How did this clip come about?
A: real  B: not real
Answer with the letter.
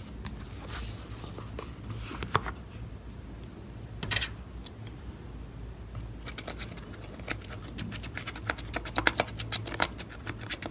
A